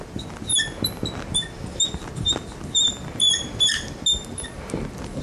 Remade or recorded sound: recorded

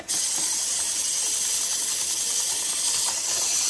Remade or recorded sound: recorded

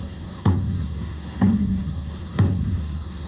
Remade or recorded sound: remade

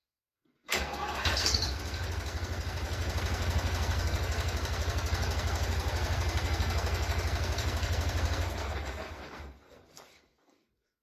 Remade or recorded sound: remade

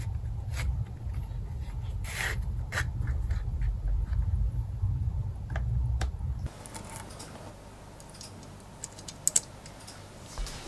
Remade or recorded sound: recorded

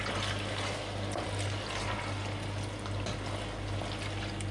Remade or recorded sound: recorded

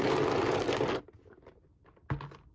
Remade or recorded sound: recorded